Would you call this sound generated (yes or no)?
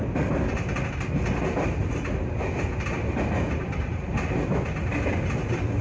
no